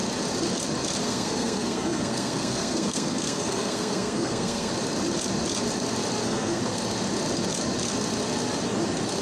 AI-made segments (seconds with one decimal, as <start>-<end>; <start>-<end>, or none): 1.0-4.7; 6.2-6.8